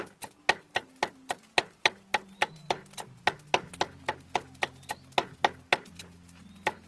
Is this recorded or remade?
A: recorded